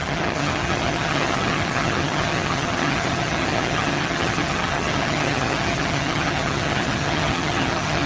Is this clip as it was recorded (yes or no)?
no